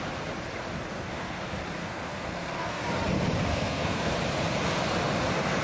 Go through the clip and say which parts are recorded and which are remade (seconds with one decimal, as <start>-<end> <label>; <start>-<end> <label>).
0.0-0.9 recorded; 0.9-1.4 remade; 1.4-1.8 recorded; 1.8-2.8 remade; 2.8-3.5 recorded; 3.5-4.1 remade; 4.1-5.6 recorded